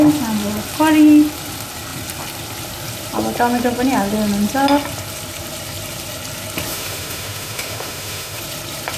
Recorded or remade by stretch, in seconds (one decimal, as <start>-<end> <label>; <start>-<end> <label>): 0.0-6.7 recorded; 6.7-8.4 remade; 8.4-9.0 recorded